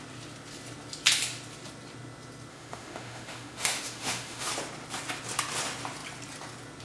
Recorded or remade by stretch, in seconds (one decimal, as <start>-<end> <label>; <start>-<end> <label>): 0.0-2.5 recorded; 2.5-4.5 remade; 4.5-6.8 recorded